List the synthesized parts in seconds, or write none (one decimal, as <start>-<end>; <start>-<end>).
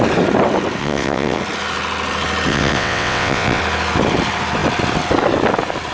0.8-1.4; 2.5-3.6